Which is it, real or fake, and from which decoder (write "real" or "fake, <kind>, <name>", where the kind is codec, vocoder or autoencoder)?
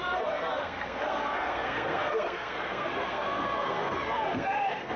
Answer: fake, codec, SNAC